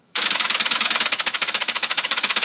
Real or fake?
fake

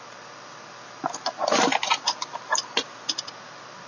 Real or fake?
real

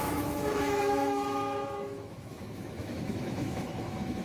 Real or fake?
fake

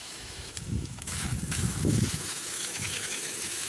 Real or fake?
fake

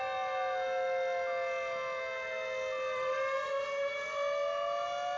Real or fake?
real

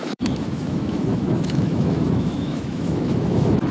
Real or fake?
fake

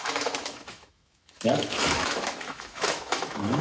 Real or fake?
fake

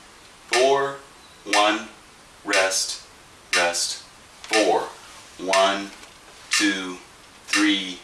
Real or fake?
real